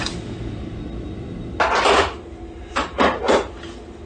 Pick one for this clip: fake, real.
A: real